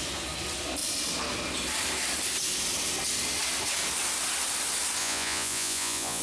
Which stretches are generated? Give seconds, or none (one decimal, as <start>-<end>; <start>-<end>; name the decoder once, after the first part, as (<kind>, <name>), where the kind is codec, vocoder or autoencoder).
5.0-6.2 (vocoder, Vocos)